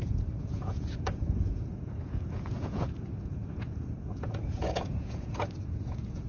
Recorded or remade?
remade